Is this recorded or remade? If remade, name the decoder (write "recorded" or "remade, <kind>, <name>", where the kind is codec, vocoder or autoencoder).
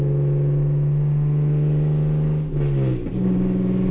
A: recorded